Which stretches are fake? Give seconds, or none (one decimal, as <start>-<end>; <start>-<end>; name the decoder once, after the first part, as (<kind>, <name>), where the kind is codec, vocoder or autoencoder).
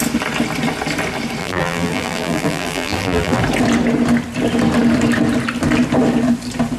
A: 1.4-3.4 (vocoder, BigVGAN v2)